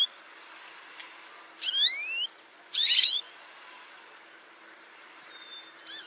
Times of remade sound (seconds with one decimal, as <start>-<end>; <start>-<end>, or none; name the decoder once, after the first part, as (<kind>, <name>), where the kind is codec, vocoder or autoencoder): 2.5-3.3 (vocoder, Vocos)